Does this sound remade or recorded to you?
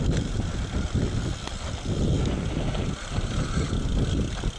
recorded